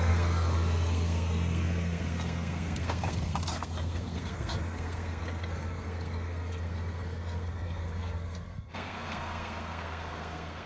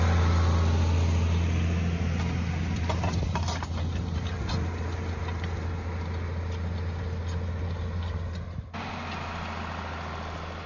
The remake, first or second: first